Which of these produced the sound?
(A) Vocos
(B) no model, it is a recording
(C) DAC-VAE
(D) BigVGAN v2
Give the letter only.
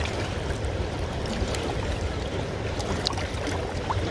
D